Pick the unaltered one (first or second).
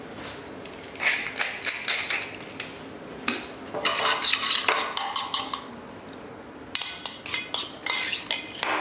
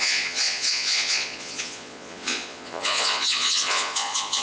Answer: first